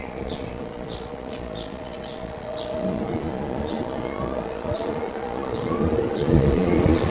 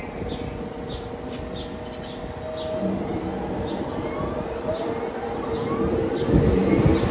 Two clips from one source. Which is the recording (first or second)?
second